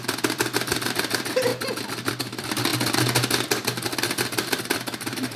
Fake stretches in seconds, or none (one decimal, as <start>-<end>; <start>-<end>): 0.0-1.5; 2.1-2.7; 4.5-5.4